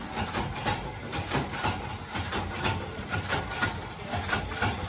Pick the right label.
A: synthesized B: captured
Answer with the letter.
B